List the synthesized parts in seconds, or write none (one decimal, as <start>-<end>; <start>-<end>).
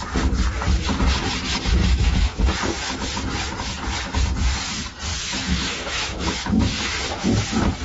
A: 1.8-2.4; 5.1-6.6